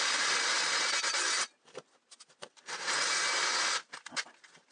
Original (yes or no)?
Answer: yes